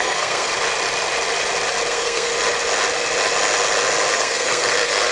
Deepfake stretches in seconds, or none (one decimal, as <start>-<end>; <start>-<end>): 0.0-0.5; 1.9-2.3; 4.1-5.1